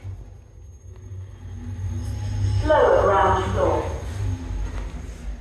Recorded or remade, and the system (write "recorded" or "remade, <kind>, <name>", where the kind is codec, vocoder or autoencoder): recorded